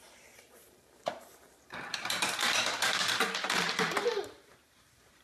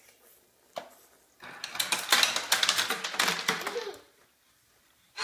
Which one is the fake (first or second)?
first